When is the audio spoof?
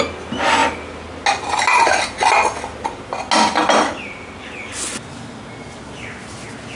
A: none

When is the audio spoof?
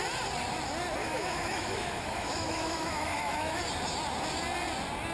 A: 1.0-3.6 (autoencoder, DAC-VAE)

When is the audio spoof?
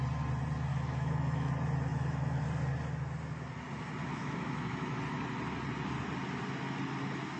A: 0.7-1.5 (autoencoder, DAC-VAE); 1.9-2.4; 4.1-5.0